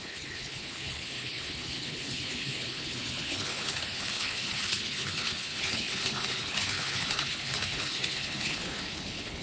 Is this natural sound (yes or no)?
no